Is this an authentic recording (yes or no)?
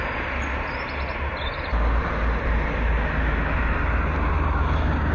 yes